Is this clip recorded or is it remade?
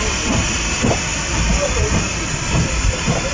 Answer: recorded